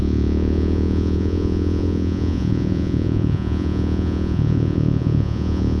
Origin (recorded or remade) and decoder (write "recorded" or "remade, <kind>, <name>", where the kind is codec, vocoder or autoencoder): remade, vocoder, Vocos